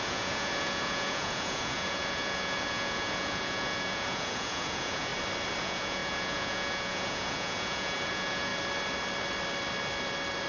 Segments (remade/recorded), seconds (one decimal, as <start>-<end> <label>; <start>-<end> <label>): 0.0-5.1 remade; 5.1-5.6 recorded; 5.6-8.5 remade; 8.5-10.5 recorded